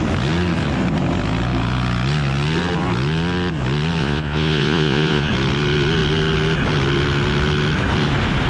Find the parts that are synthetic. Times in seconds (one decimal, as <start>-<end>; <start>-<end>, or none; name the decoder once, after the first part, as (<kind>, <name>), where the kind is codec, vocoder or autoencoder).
4.0-5.3 (vocoder, Vocos)